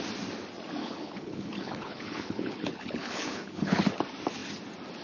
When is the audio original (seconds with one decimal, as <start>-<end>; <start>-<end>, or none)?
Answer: 0.0-0.8; 3.8-5.0